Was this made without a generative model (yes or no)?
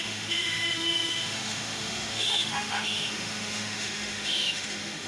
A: no